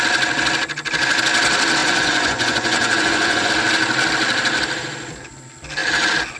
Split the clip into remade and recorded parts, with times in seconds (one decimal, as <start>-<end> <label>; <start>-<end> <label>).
0.0-1.8 recorded; 1.8-3.5 remade; 3.5-6.4 recorded